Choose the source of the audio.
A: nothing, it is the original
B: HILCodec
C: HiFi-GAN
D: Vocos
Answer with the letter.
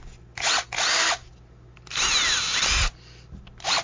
A